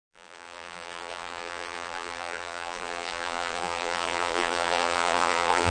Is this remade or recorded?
remade